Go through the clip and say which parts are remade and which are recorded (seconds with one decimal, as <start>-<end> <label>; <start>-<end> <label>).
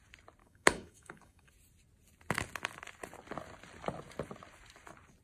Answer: 0.0-0.4 recorded; 0.4-1.5 remade; 1.5-5.2 recorded